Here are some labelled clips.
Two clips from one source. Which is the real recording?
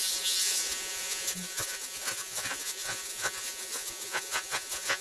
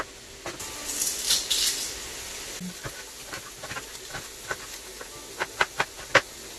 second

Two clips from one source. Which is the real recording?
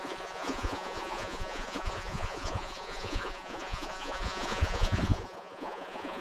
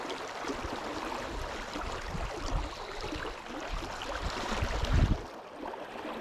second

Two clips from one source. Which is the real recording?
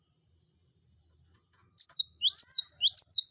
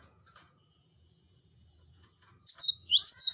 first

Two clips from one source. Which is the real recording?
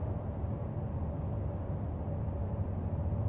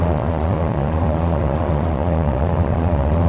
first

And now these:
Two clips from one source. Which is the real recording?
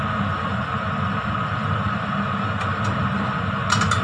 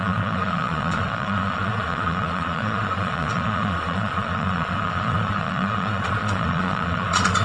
first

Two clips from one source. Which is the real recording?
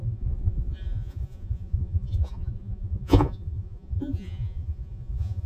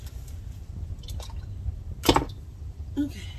second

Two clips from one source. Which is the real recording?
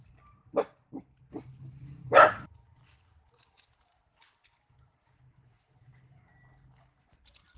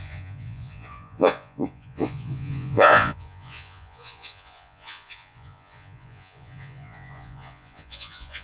first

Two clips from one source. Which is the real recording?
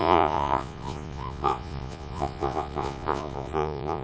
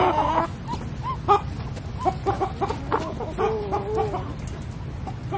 second